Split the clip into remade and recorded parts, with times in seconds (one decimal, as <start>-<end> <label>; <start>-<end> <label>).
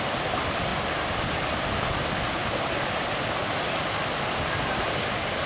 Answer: 0.0-2.4 remade; 2.4-4.8 recorded; 4.8-5.5 remade